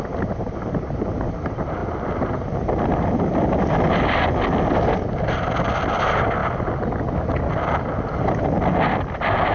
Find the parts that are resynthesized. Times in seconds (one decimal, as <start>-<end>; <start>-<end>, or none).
none